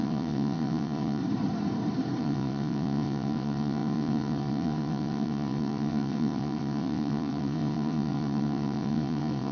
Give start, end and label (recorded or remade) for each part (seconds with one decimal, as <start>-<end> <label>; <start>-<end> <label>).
0.0-1.2 remade; 1.2-2.2 recorded; 2.2-9.5 remade

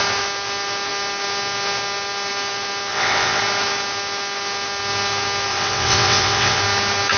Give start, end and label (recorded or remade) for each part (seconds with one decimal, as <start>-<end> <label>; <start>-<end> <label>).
0.0-2.9 recorded; 2.9-3.4 remade; 3.4-5.5 recorded; 5.5-6.6 remade; 6.6-7.2 recorded

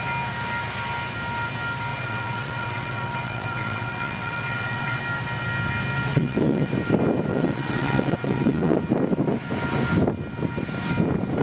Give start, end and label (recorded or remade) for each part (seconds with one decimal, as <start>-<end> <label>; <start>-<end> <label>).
0.0-1.9 recorded; 1.9-5.0 remade; 5.0-6.1 recorded; 6.1-6.7 remade; 6.7-7.3 recorded; 7.3-8.8 remade; 8.8-11.4 recorded

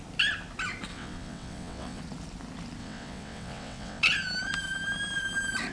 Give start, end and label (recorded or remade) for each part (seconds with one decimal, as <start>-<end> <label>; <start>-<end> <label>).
0.0-0.9 recorded; 0.9-2.0 remade; 2.0-2.8 recorded; 2.8-4.0 remade; 4.0-5.7 recorded